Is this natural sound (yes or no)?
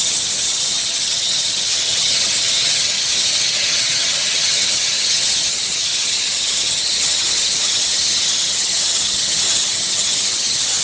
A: no